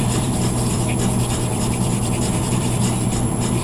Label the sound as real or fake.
fake